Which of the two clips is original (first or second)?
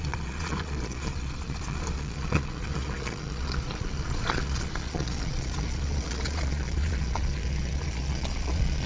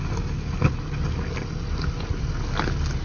second